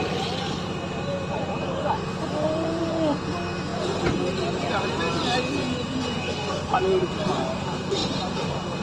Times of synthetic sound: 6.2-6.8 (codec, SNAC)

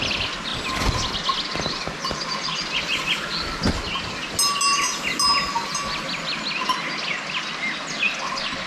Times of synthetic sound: none